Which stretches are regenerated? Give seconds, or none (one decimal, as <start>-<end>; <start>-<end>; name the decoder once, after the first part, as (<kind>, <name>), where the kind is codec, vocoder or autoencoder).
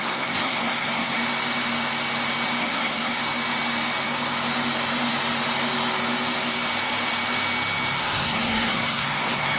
0.0-1.2 (codec, SNAC); 2.6-3.2; 8.0-9.6